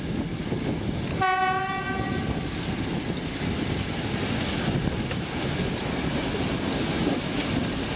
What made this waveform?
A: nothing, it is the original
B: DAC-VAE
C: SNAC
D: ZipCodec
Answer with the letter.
A